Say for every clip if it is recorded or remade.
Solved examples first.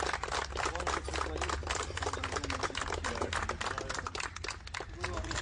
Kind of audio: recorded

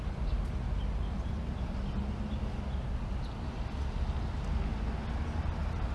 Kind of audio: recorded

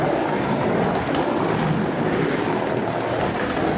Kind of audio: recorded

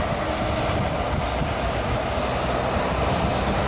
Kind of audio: recorded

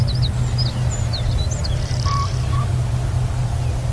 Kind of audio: recorded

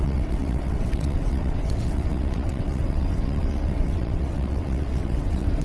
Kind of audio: remade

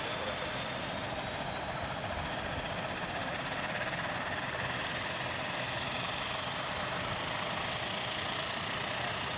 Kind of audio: recorded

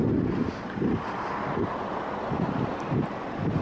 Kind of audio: recorded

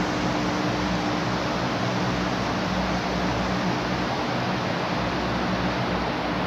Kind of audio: recorded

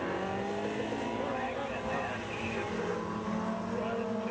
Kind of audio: recorded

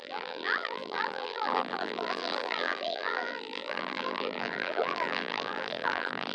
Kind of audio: remade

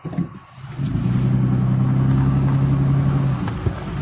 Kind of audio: recorded